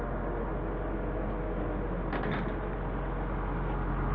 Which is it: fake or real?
real